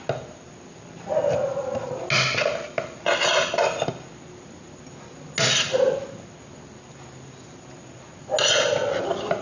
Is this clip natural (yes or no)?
yes